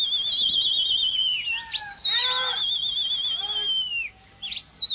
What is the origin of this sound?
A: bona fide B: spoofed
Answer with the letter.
A